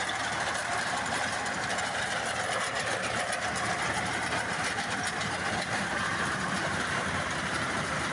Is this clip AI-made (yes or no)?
yes